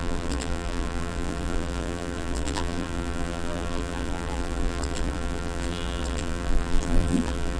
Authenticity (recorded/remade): remade